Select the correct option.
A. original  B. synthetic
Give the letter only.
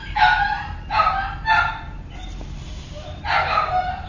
A